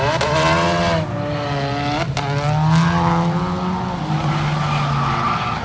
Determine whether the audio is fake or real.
real